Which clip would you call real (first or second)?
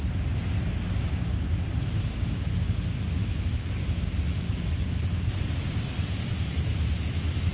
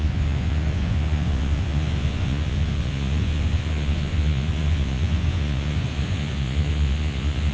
first